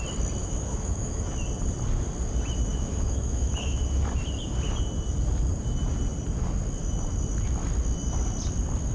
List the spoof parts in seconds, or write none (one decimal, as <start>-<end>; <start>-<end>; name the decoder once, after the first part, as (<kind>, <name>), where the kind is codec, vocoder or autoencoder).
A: 0.4-1.3 (autoencoder, DAC-VAE); 2.7-3.8